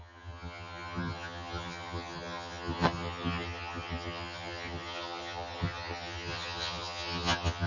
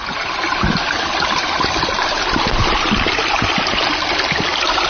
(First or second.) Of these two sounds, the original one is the second